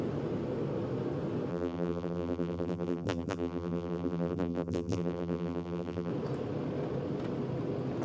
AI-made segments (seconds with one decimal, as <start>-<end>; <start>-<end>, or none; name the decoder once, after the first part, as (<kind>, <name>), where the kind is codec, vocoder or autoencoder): 1.5-6.1 (vocoder, BigVGAN v2)